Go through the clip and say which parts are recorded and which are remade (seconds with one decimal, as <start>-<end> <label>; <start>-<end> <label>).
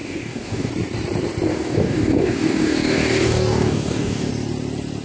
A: 0.0-0.7 remade; 0.7-1.5 recorded; 1.5-4.3 remade; 4.3-5.0 recorded